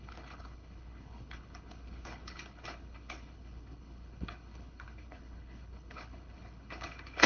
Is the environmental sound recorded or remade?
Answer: remade